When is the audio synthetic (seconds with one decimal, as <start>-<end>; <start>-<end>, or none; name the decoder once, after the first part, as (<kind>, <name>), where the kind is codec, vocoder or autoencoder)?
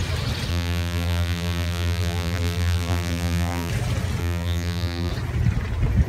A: 0.5-3.7 (vocoder, BigVGAN v2); 4.2-5.1